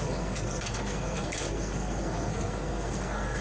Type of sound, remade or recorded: remade